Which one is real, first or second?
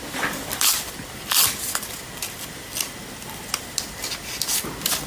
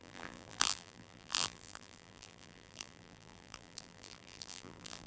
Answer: first